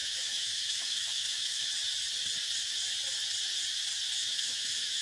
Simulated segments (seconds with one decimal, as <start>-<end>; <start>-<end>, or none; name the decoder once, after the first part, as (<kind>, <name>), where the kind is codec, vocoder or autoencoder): 0.0-1.7 (autoencoder, DAC-VAE); 4.2-5.0